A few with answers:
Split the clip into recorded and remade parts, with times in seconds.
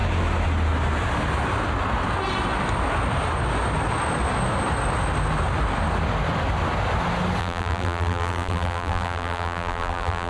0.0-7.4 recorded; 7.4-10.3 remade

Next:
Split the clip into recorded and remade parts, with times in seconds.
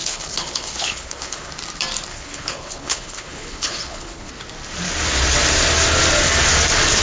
0.0-1.5 remade; 1.5-2.1 recorded; 2.1-4.3 remade; 4.3-7.0 recorded